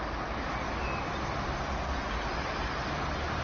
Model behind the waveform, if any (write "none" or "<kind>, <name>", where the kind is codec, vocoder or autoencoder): none